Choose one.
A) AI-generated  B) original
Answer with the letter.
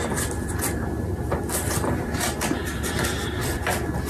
A